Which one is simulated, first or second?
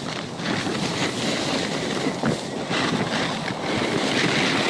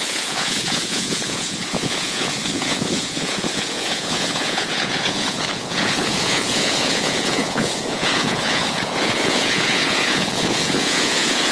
second